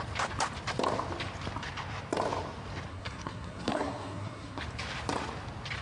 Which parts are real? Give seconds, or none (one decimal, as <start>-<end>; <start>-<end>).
0.0-2.9; 4.6-5.8